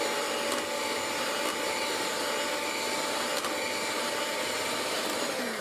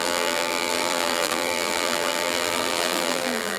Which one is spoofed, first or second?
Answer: second